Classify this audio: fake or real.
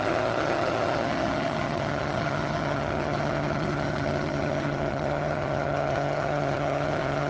fake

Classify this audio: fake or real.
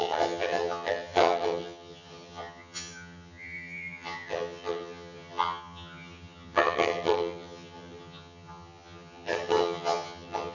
fake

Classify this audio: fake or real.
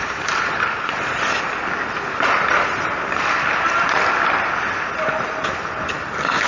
real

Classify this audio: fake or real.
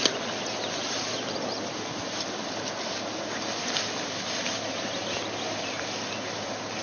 real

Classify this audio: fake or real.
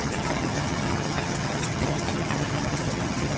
fake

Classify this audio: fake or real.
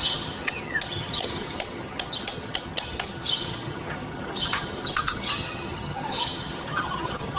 fake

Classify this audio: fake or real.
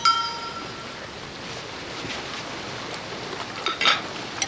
real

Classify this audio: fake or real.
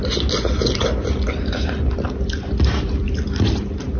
real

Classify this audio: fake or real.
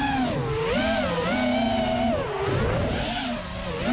real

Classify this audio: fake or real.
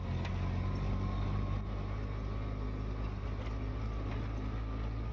real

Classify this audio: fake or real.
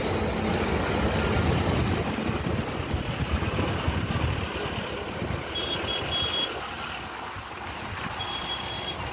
real